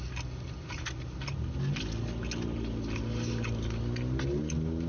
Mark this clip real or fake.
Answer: real